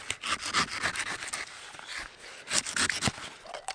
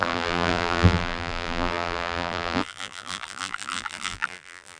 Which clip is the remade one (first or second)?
second